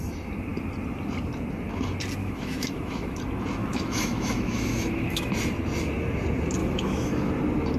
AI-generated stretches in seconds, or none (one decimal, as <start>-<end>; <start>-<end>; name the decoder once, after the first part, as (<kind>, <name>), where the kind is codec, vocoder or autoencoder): 2.2-3.2 (autoencoder, DAC-VAE); 3.6-5.3; 6.6-7.3